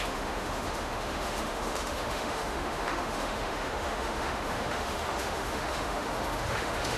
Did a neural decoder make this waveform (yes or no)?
yes